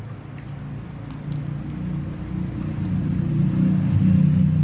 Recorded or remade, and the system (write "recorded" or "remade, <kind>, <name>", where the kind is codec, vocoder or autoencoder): recorded